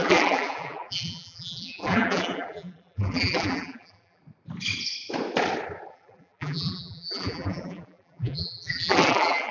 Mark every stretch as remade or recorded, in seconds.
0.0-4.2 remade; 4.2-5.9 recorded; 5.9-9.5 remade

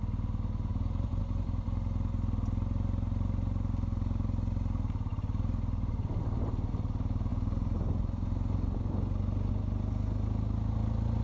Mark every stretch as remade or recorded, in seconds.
0.0-0.7 recorded; 0.7-1.2 remade; 1.2-11.2 recorded

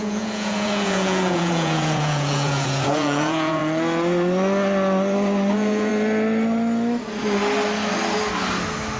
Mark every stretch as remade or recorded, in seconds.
0.0-3.6 remade; 3.6-5.5 recorded; 5.5-5.9 remade; 5.9-9.0 recorded

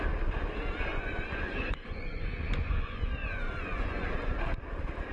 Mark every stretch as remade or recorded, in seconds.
0.0-0.9 recorded; 0.9-4.0 remade; 4.0-5.1 recorded

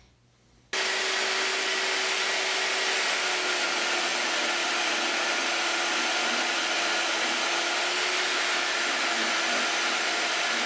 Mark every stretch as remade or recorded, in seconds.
0.0-10.7 recorded

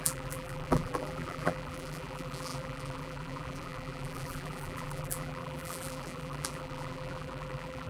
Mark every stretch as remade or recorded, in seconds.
0.0-7.9 remade

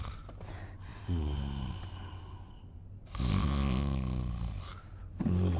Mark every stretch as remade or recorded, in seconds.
0.0-5.6 recorded

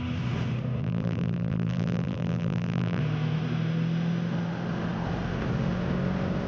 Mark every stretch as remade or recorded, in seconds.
0.0-0.8 recorded; 0.8-3.0 remade; 3.0-6.5 recorded